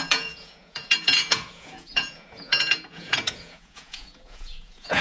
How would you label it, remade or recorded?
remade